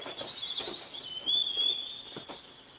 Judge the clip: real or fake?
real